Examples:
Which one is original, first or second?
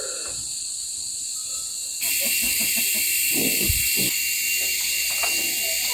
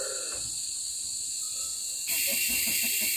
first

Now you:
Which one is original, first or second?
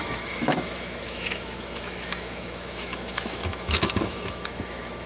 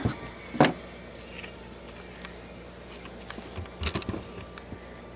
second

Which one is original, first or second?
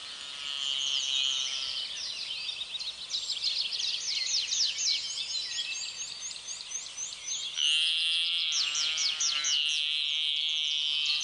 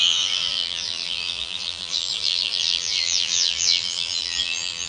first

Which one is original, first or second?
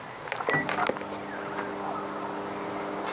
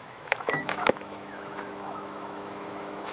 first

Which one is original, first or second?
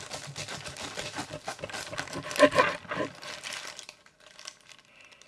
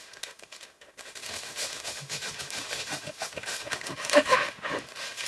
first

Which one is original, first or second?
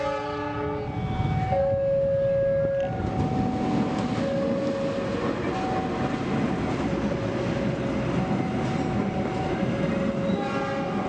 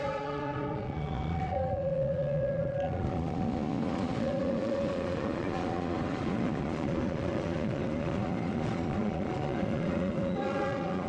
first